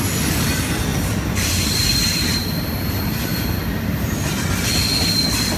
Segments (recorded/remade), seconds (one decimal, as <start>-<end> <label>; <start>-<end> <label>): 0.0-0.9 recorded; 0.9-4.3 remade; 4.3-5.6 recorded

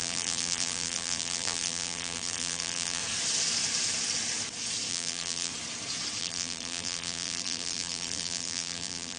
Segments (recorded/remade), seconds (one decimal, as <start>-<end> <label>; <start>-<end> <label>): 0.0-3.0 remade; 3.0-4.9 recorded; 4.9-5.5 remade; 5.5-6.2 recorded; 6.2-9.2 remade

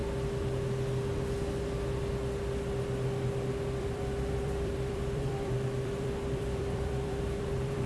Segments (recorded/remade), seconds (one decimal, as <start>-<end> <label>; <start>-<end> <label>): 0.0-3.8 recorded; 3.8-7.9 remade

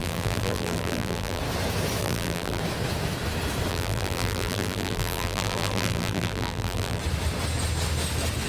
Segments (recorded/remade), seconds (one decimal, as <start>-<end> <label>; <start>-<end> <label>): 0.0-1.4 remade; 1.4-2.0 recorded; 2.0-2.6 remade; 2.6-3.7 recorded; 3.7-7.0 remade; 7.0-8.5 recorded

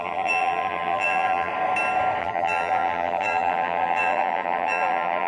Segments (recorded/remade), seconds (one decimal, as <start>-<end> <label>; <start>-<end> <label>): 0.0-1.5 remade; 1.5-2.2 recorded; 2.2-5.3 remade